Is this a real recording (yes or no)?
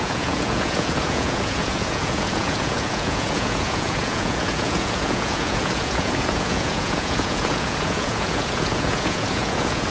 no